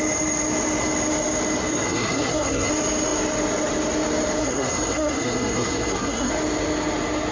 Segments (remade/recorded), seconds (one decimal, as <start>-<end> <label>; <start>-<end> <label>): 0.0-1.7 recorded; 1.7-2.7 remade; 2.7-4.4 recorded; 4.4-6.3 remade; 6.3-7.3 recorded